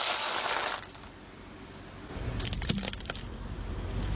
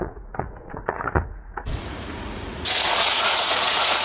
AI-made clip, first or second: second